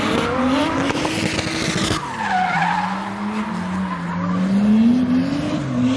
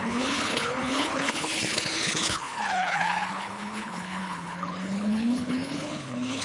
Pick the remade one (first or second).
second